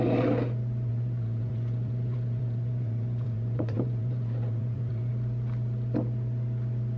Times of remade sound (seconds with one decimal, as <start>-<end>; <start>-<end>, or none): 0.9-5.1